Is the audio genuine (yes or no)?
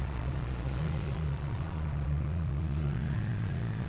no